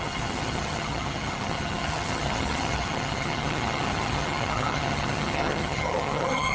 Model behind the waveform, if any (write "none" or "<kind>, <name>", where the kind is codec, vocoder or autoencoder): vocoder, HiFi-GAN